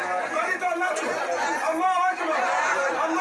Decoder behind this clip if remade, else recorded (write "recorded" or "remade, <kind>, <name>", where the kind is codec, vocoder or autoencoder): recorded